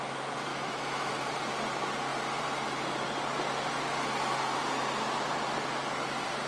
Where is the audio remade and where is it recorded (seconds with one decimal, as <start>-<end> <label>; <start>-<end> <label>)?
0.0-0.5 recorded; 0.5-1.1 remade; 1.1-6.5 recorded